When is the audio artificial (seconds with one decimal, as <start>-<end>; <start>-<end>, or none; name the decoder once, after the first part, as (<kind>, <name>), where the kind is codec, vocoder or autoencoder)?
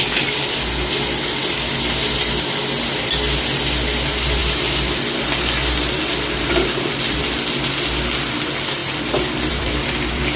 4.4-7.2 (vocoder, BigVGAN v2); 8.8-10.4